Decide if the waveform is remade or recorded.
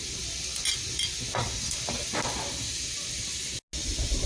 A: recorded